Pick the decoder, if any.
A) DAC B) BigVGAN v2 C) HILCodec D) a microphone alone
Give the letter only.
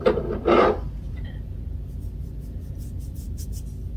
B